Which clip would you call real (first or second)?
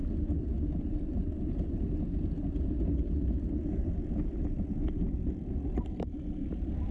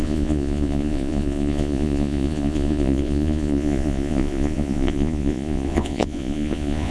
first